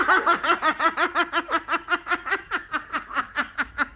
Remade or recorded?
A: remade